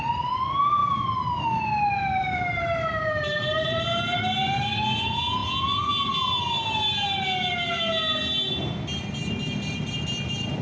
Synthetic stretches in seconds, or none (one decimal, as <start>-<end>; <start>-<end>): 0.8-1.4; 2.2-3.9